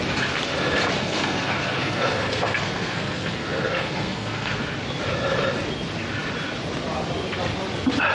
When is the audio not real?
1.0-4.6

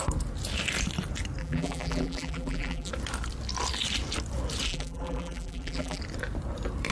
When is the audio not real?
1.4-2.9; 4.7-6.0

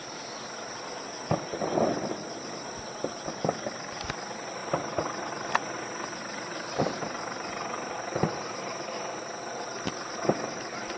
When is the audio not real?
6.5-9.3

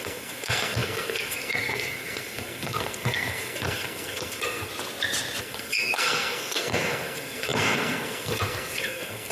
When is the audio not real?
0.0-4.7; 5.4-9.3

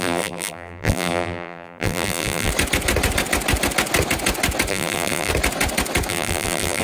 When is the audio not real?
0.0-2.5; 4.7-5.3; 6.1-6.8

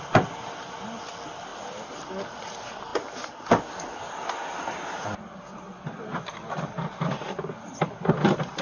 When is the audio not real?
none